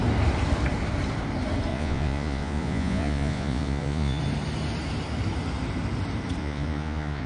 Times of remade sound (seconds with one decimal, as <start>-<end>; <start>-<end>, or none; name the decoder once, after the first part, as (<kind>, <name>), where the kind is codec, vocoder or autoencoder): 1.7-4.2 (vocoder, Vocos); 6.4-7.3